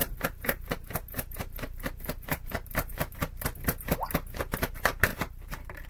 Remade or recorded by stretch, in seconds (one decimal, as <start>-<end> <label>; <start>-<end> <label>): 0.0-3.2 remade; 3.2-5.1 recorded; 5.1-5.9 remade